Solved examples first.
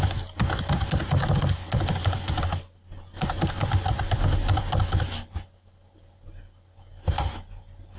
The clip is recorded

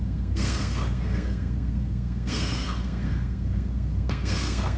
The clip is remade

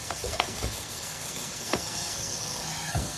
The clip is remade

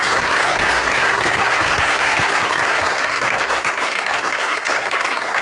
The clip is remade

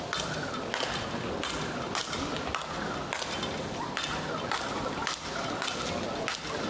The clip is recorded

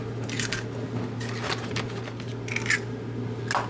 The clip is recorded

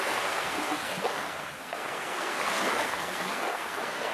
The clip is remade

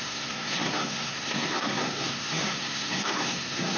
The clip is remade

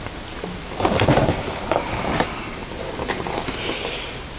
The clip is recorded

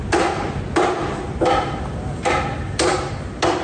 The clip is recorded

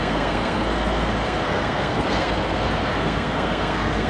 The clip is remade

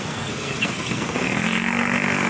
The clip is remade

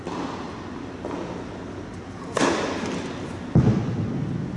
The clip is recorded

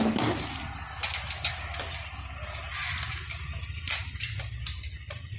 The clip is recorded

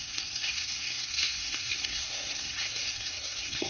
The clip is remade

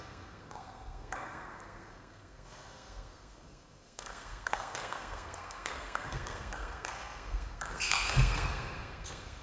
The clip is remade